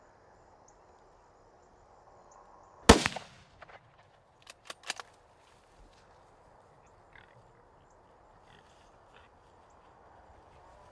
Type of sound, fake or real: real